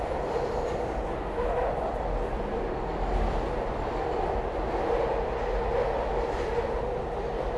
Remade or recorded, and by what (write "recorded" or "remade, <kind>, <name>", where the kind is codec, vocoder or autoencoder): recorded